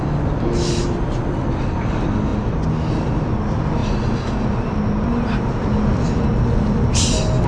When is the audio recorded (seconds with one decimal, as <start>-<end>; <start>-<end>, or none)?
0.0-7.5